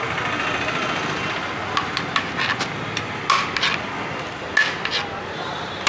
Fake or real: real